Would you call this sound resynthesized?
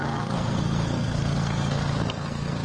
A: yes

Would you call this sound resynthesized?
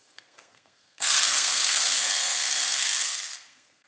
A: yes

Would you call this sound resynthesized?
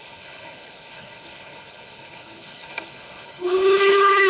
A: yes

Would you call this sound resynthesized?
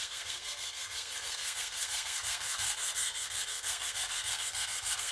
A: yes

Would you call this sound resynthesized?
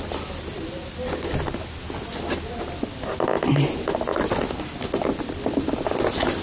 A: no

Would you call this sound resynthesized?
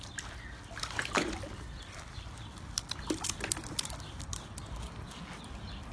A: no